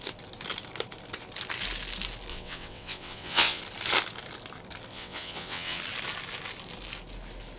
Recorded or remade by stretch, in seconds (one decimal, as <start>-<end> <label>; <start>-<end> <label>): 0.0-2.3 recorded; 2.3-3.6 remade; 3.6-4.9 recorded; 4.9-5.8 remade; 5.8-7.6 recorded